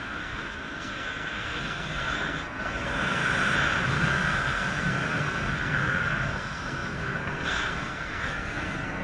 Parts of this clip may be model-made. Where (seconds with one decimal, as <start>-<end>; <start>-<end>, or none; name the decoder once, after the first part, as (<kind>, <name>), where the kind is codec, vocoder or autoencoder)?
0.0-3.2 (codec, SNAC); 3.9-9.0